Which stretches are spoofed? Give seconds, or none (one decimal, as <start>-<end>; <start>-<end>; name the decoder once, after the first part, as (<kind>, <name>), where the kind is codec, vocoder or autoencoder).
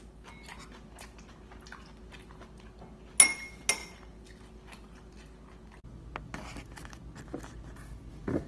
none